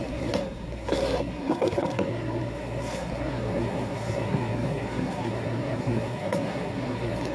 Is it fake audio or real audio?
fake